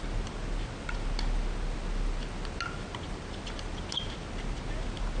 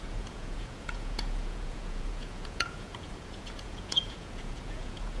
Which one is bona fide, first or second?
first